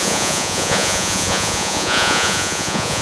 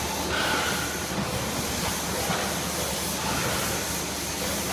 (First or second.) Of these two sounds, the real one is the second